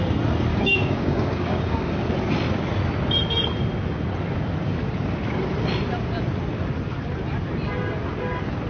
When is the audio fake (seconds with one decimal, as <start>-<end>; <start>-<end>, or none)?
0.5-2.0